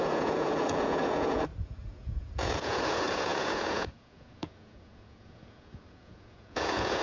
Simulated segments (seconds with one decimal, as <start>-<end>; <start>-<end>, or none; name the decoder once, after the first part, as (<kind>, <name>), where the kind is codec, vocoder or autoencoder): 0.0-7.0 (vocoder, Vocos)